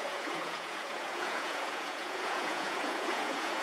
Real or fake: fake